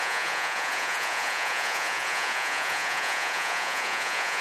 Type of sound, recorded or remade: remade